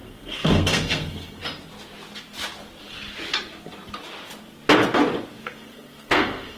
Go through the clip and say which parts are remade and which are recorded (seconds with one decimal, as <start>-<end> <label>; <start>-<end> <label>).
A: 0.0-1.4 remade; 1.4-5.4 recorded; 5.4-6.6 remade

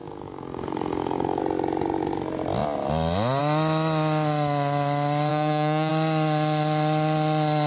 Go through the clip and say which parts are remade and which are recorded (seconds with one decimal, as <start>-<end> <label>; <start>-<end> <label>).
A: 0.0-1.4 remade; 1.4-5.3 recorded; 5.3-5.9 remade; 5.9-7.7 recorded

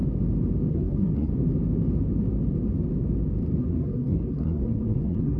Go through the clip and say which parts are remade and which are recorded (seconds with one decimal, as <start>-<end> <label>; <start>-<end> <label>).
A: 0.0-0.7 recorded; 0.7-1.3 remade; 1.3-3.6 recorded; 3.6-5.4 remade

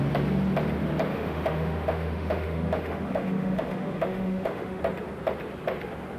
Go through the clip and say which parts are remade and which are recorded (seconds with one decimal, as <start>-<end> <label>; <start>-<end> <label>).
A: 0.0-1.1 recorded; 1.1-4.8 remade; 4.8-6.2 recorded

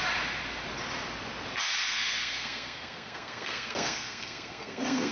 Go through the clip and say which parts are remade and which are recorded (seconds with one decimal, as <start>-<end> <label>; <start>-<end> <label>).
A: 0.0-1.8 recorded; 1.8-5.1 remade

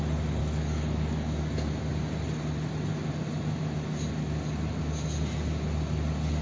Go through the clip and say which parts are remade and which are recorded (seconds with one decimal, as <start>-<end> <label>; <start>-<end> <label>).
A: 0.0-0.4 recorded; 0.4-1.5 remade; 1.5-6.4 recorded

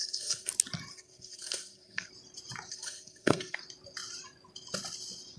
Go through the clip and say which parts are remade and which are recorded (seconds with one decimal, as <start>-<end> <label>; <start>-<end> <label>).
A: 0.0-0.5 remade; 0.5-0.9 recorded; 0.9-2.1 remade; 2.1-2.7 recorded; 2.7-3.6 remade; 3.6-5.4 recorded